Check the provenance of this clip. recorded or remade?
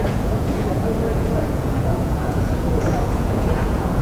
remade